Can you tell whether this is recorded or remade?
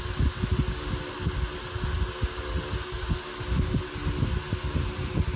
recorded